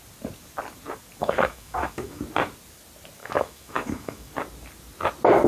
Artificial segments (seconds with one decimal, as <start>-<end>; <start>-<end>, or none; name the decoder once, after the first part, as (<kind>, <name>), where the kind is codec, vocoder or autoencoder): 1.2-2.2 (autoencoder, DAC-VAE); 3.2-4.3